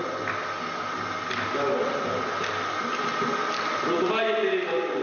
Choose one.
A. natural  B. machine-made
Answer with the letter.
A